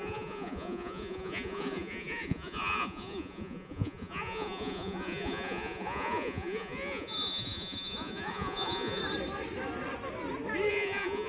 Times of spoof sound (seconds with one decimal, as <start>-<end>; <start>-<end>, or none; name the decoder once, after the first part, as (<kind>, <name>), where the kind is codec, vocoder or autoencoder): 0.0-9.0 (vocoder, Vocos); 10.7-11.3

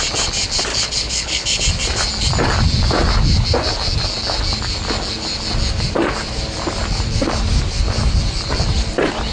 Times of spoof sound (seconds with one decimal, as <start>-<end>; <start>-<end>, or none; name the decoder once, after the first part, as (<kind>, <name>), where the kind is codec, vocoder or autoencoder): 0.7-1.6 (codec, HILCodec)

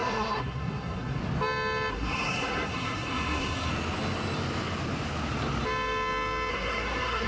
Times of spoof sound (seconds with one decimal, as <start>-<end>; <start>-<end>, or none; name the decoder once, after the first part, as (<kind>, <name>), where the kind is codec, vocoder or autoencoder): 0.0-1.2 (codec, SNAC); 1.9-3.7; 6.5-7.3

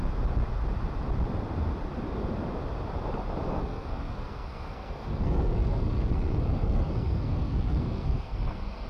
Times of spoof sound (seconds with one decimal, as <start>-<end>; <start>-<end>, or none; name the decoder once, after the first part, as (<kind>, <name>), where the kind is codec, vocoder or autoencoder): 3.5-8.9 (codec, SNAC)

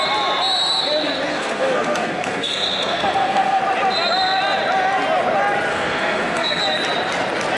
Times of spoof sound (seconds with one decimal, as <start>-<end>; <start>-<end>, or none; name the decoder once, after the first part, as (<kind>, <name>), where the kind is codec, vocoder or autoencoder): 1.3-3.6 (codec, SNAC); 5.7-6.6

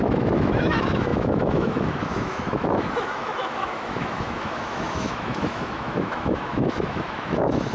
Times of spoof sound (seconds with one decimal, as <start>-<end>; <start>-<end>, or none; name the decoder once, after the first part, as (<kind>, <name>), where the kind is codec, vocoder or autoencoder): 0.0-7.7 (autoencoder, DAC-VAE)

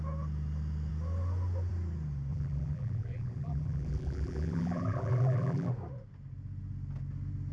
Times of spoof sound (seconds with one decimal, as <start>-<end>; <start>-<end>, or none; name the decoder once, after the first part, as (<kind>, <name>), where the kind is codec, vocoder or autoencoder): 2.3-5.7 (vocoder, BigVGAN v2)